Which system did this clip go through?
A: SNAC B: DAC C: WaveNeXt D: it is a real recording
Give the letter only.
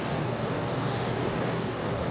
B